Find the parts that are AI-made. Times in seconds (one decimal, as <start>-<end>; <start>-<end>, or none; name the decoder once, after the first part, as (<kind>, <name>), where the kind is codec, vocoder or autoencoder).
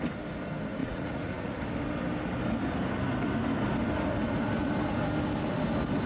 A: 0.8-1.6 (vocoder, Vocos)